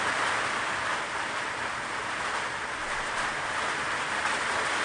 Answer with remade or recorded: recorded